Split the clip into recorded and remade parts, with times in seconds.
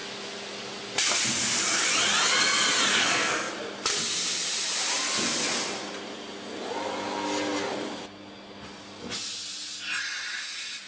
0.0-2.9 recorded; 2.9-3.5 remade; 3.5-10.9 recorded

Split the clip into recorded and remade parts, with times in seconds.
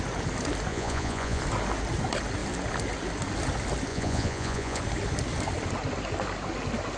0.0-0.7 recorded; 0.7-1.4 remade; 1.4-3.9 recorded; 3.9-4.8 remade; 4.8-7.0 recorded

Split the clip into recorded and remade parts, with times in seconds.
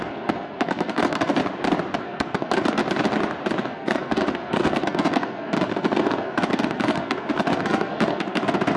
0.0-1.4 remade; 1.4-2.0 recorded; 2.0-2.8 remade; 2.8-3.6 recorded; 3.6-8.8 remade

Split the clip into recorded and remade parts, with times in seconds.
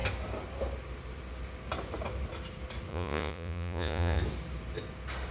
0.0-2.9 recorded; 2.9-4.2 remade; 4.2-5.3 recorded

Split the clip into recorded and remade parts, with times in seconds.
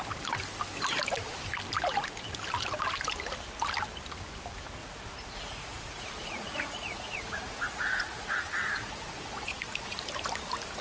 0.0-4.8 recorded; 4.8-10.0 remade; 10.0-10.8 recorded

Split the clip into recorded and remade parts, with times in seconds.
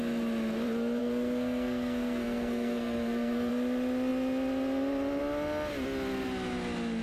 0.0-1.0 recorded; 1.0-3.5 remade; 3.5-7.0 recorded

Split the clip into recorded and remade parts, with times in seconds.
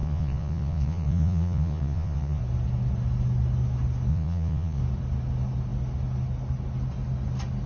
0.0-2.4 remade; 2.4-4.1 recorded; 4.1-4.8 remade; 4.8-7.7 recorded